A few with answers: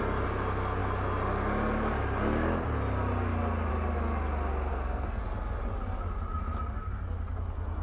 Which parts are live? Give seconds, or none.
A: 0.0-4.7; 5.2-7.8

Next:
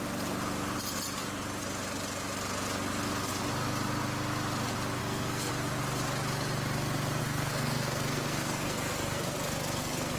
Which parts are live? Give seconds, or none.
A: 0.0-5.0; 5.5-7.2

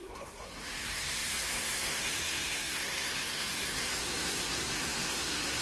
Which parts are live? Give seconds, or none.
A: none

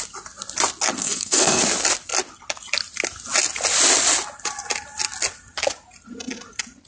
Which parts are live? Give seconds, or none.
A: 0.0-1.0; 1.6-6.9

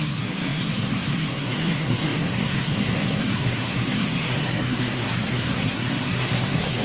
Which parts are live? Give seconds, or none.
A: none

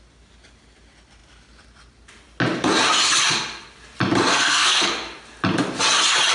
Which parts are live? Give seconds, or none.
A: 0.0-4.3; 4.9-6.3

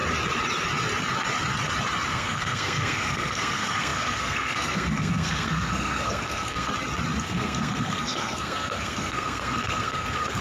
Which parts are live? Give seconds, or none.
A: 0.0-2.1; 6.7-7.2

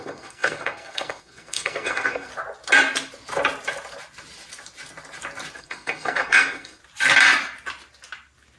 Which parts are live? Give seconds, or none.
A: 2.3-5.6; 6.8-8.6